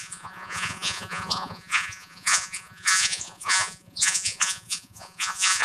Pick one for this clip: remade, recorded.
remade